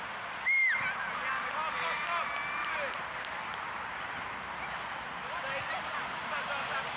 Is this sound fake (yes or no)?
no